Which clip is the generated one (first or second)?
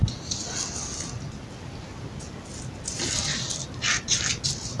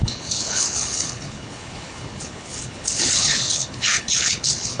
second